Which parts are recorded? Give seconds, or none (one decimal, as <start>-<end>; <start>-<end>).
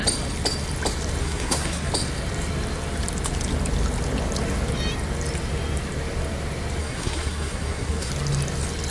0.0-1.2; 1.9-6.8; 8.1-8.9